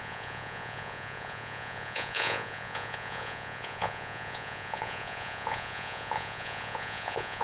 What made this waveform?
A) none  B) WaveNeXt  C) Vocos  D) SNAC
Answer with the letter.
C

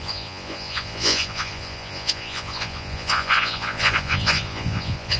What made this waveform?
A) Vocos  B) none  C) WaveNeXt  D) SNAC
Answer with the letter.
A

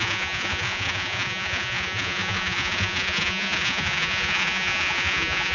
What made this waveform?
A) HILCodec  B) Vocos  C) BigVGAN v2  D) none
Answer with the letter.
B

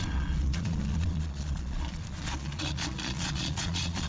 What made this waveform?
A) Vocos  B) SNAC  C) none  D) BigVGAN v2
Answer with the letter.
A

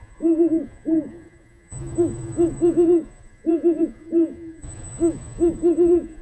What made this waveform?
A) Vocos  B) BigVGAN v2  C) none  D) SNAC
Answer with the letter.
A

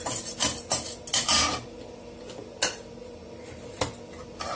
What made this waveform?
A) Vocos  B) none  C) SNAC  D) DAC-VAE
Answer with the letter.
B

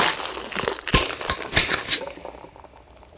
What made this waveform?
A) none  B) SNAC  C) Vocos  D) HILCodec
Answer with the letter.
A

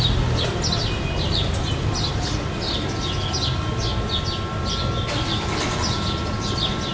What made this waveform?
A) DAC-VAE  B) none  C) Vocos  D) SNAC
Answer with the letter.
B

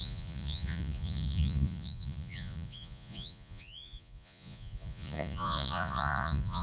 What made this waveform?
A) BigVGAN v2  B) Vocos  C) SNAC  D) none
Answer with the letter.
B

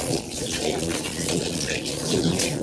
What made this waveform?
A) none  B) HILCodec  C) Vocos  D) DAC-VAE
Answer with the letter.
C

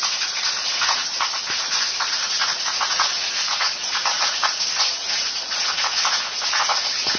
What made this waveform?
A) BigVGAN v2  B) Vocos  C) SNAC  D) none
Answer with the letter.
B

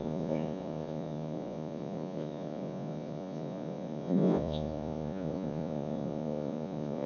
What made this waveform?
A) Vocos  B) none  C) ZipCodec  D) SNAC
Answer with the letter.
A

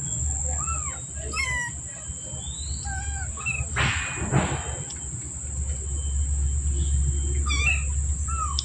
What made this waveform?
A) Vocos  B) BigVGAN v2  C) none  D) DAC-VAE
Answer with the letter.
C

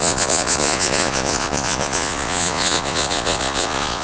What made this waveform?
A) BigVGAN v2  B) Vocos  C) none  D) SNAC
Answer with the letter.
B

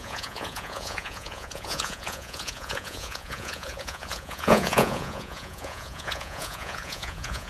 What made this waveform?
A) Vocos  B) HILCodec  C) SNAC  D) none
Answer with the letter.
A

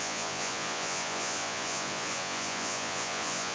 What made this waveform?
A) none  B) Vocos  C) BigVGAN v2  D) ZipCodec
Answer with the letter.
B